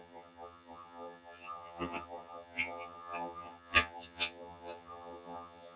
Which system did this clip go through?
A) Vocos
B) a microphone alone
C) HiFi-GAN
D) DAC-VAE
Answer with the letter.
C